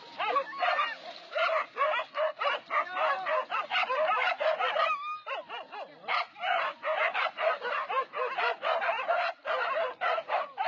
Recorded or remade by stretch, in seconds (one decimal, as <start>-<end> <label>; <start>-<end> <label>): 0.0-10.7 recorded